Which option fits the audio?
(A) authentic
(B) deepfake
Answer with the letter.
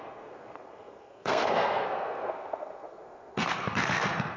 B